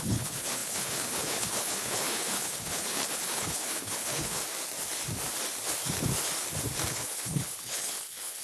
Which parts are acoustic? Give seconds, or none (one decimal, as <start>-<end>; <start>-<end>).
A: 4.4-6.9